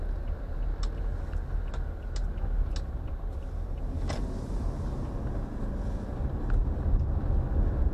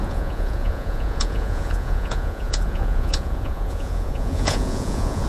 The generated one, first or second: second